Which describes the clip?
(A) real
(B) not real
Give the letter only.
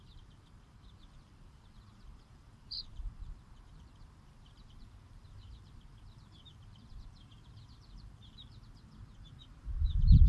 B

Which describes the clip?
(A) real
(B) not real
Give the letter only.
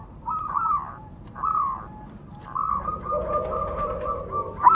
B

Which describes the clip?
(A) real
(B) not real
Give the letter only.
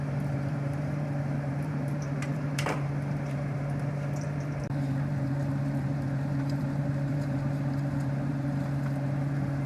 B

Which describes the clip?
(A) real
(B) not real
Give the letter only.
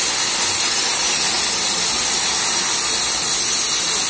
A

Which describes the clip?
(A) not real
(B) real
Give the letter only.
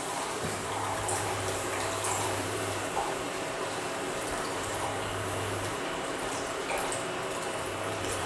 A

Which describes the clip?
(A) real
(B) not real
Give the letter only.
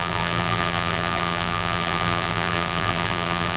B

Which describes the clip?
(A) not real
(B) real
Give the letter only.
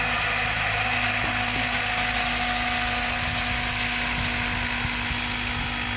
B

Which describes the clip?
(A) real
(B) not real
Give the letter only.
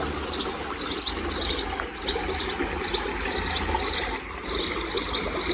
A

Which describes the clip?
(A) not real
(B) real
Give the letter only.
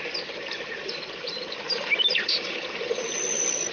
B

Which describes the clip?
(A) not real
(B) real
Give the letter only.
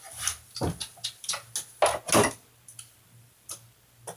B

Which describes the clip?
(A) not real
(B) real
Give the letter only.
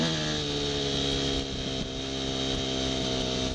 B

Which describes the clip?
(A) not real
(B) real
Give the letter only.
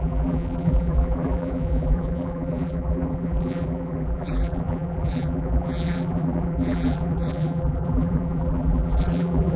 A